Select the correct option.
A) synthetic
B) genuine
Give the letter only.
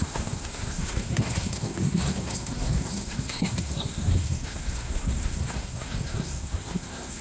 A